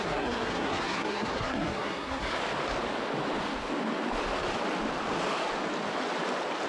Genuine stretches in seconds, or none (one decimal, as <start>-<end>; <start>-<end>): 2.4-6.7